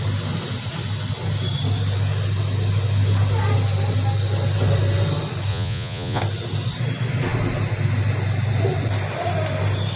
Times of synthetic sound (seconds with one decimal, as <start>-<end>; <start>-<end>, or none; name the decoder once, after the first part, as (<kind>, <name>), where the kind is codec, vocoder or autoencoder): 5.5-6.2 (vocoder, Vocos)